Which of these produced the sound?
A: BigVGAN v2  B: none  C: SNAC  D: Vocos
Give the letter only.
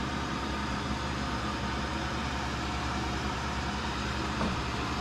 A